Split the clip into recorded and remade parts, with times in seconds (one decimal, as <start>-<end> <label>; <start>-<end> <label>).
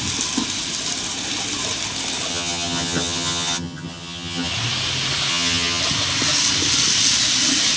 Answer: 0.0-2.3 recorded; 2.3-4.5 remade; 4.5-5.3 recorded; 5.3-5.8 remade; 5.8-7.8 recorded